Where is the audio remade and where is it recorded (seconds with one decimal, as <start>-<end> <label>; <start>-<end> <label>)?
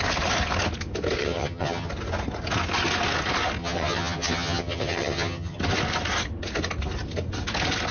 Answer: 0.0-1.2 recorded; 1.2-1.9 remade; 1.9-3.6 recorded; 3.6-5.6 remade; 5.6-7.9 recorded